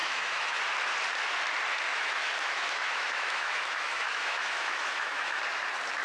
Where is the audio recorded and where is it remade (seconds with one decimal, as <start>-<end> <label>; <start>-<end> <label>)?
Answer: 0.0-0.6 remade; 0.6-1.9 recorded; 1.9-5.4 remade; 5.4-6.0 recorded